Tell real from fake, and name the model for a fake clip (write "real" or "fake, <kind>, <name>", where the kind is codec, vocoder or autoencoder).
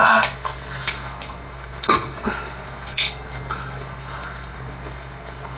fake, codec, SNAC